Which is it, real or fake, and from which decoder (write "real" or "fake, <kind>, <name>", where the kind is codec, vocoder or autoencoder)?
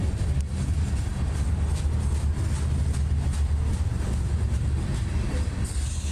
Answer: real